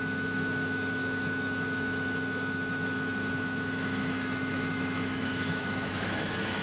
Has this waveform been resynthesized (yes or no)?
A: yes